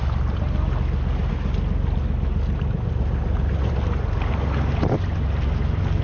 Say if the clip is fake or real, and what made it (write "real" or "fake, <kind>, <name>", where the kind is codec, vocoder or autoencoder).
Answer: real